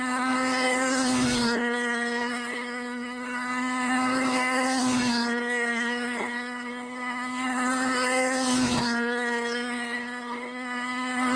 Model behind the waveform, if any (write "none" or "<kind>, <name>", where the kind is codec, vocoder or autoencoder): codec, SNAC